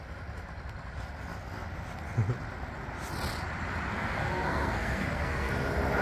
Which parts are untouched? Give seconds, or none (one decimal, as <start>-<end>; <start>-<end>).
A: 0.0-3.9; 5.5-6.0